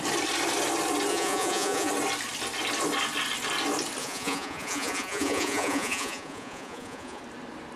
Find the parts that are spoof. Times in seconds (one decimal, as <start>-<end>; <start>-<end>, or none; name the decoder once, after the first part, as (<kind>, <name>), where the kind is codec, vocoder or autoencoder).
1.1-1.9 (vocoder, Vocos); 4.0-7.2